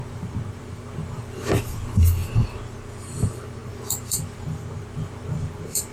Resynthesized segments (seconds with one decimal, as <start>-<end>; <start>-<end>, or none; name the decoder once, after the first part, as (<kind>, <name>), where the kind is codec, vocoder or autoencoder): 0.0-2.2 (vocoder, BigVGAN v2); 3.0-5.9